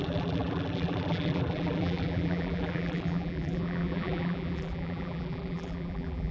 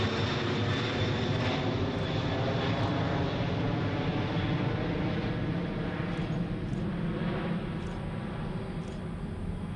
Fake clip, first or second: first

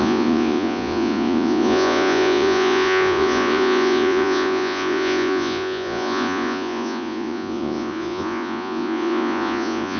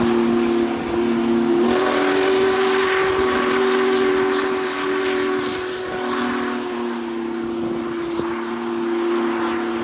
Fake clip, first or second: first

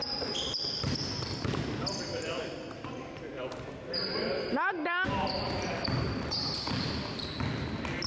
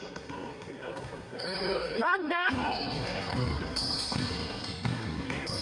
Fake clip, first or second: second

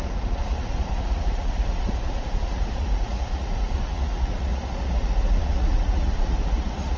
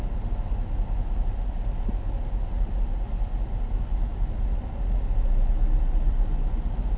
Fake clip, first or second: first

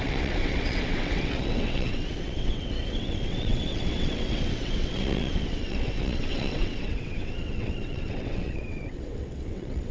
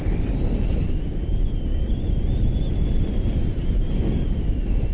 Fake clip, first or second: first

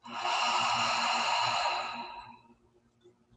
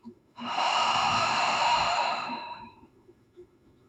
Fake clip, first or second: second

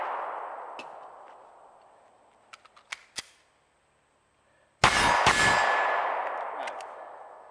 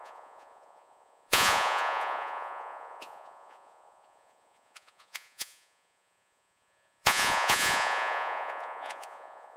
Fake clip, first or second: second